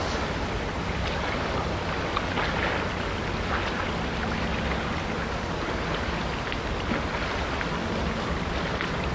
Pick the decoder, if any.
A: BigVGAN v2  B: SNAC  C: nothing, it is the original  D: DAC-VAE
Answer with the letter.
C